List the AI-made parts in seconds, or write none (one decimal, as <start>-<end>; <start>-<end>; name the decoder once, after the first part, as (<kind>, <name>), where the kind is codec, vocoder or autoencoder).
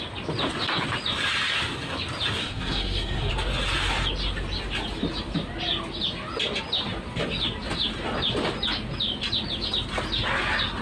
2.4-3.3 (codec, SNAC)